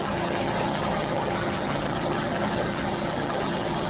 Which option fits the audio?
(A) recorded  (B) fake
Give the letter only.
B